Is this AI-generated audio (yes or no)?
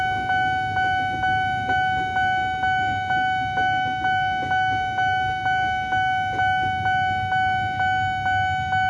no